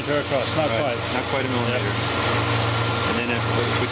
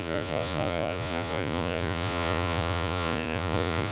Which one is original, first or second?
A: first